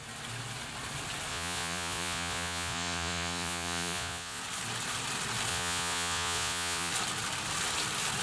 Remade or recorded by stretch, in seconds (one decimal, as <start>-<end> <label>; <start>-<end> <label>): 0.0-1.3 recorded; 1.3-4.4 remade; 4.4-5.5 recorded; 5.5-6.9 remade; 6.9-8.2 recorded